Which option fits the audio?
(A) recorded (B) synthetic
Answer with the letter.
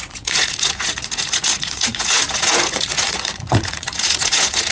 B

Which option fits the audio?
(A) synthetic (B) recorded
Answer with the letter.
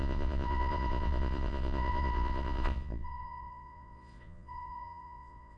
A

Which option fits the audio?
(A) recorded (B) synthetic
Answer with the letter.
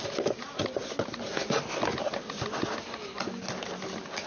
A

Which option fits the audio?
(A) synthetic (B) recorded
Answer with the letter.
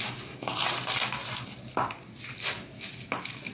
B